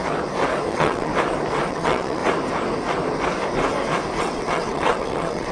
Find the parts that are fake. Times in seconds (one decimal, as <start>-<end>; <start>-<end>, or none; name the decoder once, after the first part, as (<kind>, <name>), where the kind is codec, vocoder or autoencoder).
0.7-1.1 (vocoder, WaveNeXt); 1.7-2.2; 4.2-5.5